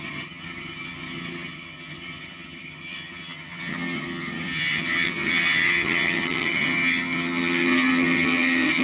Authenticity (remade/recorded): remade